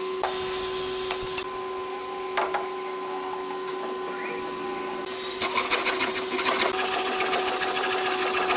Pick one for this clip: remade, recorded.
recorded